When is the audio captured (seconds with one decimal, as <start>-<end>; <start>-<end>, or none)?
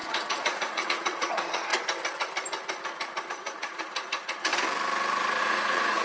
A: 1.7-3.3; 4.5-5.4